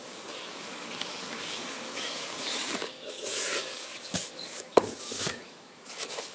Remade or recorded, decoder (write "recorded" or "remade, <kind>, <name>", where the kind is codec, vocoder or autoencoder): remade, codec, DAC